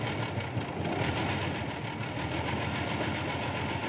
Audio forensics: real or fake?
real